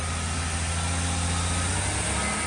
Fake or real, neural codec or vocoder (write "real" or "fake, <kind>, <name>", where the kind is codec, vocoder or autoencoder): real